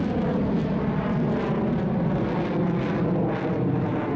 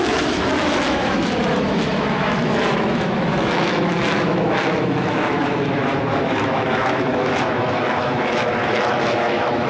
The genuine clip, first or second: first